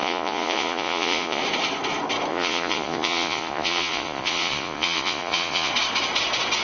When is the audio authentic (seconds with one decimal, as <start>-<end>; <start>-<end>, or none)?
1.4-2.3; 5.7-6.6